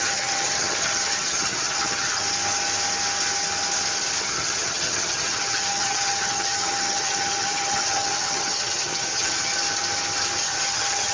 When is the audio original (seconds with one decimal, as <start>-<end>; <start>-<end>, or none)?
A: 2.2-4.2; 9.5-10.4